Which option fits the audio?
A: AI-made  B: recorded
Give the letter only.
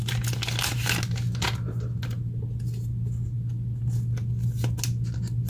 B